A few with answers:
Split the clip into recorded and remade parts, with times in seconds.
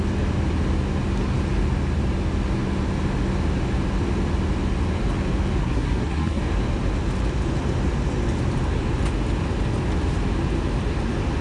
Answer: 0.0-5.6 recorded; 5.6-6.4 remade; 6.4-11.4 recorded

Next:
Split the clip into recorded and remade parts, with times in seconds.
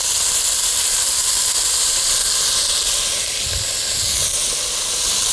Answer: 0.0-5.3 recorded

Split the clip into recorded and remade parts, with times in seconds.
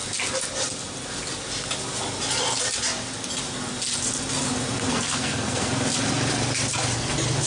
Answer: 0.0-4.9 recorded; 4.9-5.7 remade; 5.7-7.5 recorded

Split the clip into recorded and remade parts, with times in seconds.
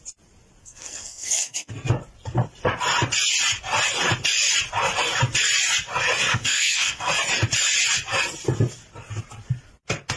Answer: 0.0-0.6 recorded; 0.6-1.7 remade; 1.7-6.3 recorded; 6.3-7.1 remade; 7.1-10.2 recorded